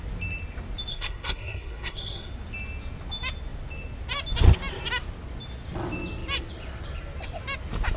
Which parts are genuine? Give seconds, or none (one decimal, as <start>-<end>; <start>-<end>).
0.0-0.9; 2.3-8.0